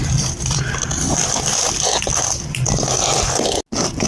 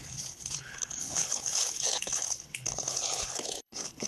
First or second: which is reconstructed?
second